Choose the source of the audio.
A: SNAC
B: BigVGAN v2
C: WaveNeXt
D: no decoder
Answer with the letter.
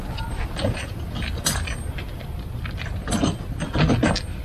D